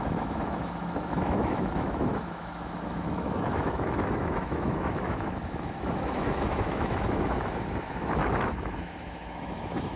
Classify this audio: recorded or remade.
remade